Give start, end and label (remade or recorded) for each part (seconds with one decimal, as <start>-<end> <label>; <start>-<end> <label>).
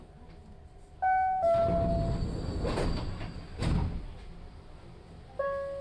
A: 0.0-5.8 recorded